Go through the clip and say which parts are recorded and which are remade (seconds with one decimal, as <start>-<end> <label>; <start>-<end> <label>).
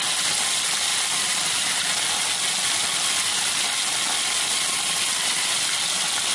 0.0-0.9 recorded; 0.9-1.9 remade; 1.9-6.3 recorded